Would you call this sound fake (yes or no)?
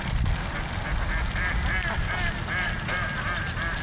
no